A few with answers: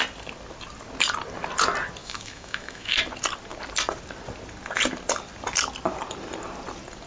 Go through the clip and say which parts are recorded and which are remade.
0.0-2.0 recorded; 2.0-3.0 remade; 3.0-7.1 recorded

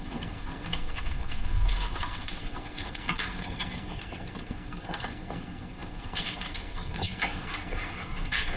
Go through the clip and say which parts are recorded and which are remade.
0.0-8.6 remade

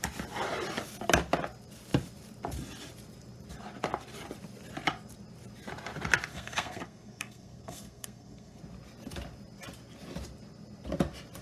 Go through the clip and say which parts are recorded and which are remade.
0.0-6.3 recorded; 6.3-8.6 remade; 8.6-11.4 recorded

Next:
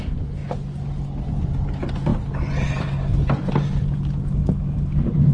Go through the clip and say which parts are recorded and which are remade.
0.0-5.3 recorded